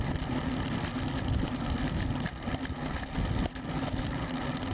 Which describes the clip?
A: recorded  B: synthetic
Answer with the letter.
A